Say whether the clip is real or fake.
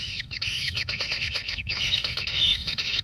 fake